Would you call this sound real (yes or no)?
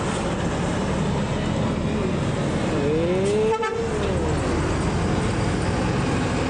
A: yes